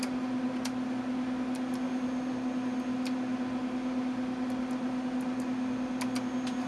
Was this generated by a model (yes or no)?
no